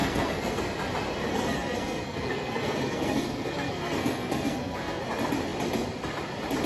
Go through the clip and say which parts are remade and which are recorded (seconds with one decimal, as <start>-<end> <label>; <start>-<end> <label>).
0.0-0.6 remade; 0.6-1.3 recorded; 1.3-5.0 remade; 5.0-6.7 recorded